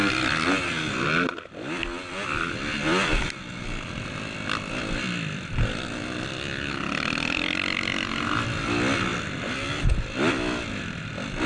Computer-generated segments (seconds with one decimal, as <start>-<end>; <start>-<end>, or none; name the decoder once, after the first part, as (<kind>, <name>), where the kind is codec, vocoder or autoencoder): none